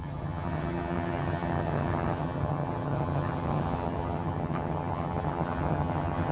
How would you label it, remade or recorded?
remade